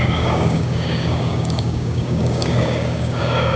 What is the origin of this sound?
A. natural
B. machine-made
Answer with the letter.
B